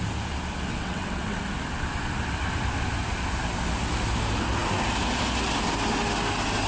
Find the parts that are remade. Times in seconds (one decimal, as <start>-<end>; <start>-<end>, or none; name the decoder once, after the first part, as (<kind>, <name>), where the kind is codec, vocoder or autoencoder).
0.7-1.4 (vocoder, WaveNeXt)